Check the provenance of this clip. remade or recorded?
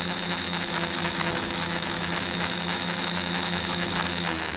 remade